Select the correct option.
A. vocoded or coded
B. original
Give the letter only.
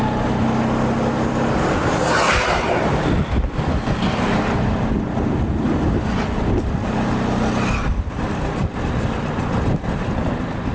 B